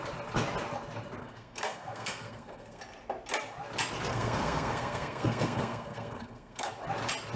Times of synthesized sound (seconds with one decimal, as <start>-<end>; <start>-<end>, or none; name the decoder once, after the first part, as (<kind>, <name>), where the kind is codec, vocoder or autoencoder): 1.2-2.8 (codec, SNAC); 4.1-6.7